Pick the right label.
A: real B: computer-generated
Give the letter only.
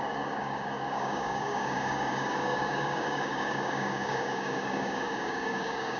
B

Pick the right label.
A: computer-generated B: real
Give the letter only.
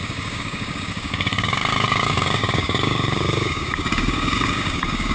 A